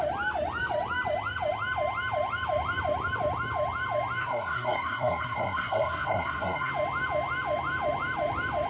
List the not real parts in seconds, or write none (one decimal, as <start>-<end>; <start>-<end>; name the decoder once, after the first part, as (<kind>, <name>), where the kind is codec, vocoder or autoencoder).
4.2-6.7 (codec, SNAC)